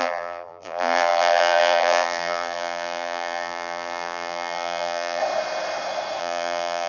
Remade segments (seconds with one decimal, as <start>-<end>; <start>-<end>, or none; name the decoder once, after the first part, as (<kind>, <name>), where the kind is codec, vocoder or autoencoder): 0.0-5.2 (vocoder, BigVGAN v2); 6.2-6.9